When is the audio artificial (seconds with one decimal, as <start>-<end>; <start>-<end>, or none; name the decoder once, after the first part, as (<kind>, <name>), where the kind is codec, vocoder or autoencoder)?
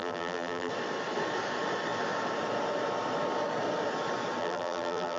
0.0-0.7 (vocoder, BigVGAN v2); 4.4-5.2